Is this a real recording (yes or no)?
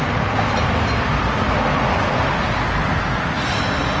yes